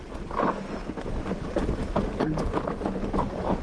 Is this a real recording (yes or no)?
yes